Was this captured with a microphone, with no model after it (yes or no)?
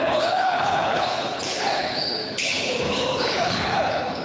no